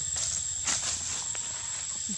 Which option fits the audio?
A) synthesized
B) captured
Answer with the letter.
B